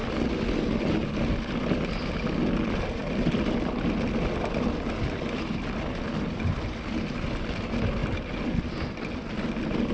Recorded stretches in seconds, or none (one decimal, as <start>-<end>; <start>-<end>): 0.0-9.9